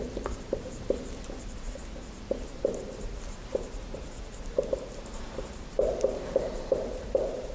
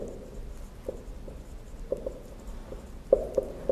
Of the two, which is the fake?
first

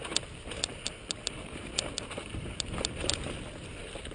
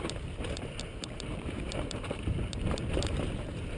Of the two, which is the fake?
second